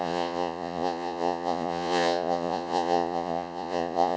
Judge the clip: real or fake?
fake